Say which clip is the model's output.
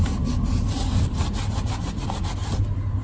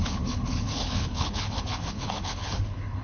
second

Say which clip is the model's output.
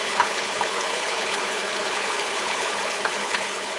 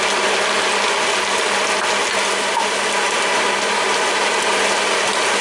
first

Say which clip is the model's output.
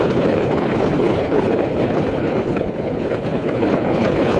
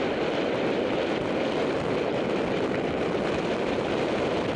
first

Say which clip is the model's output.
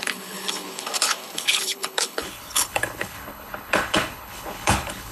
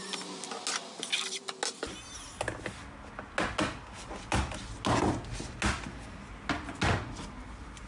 first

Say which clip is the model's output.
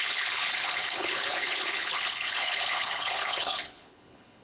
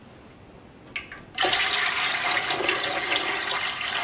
first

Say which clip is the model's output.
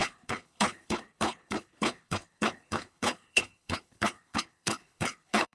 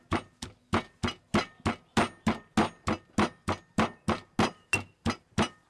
first